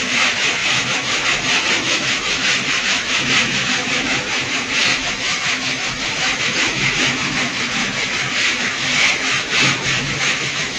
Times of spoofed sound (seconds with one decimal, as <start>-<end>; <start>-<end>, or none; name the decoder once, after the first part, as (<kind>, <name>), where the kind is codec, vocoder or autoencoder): 0.0-10.8 (autoencoder, DAC-VAE)